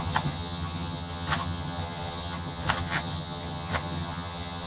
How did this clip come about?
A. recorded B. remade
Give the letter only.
B